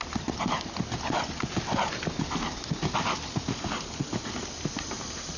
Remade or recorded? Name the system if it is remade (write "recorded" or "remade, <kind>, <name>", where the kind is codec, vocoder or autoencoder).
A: recorded